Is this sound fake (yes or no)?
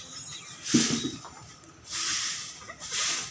no